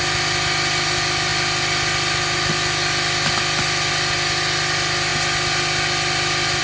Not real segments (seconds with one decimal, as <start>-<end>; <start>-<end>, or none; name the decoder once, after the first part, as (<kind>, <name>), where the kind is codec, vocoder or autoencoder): none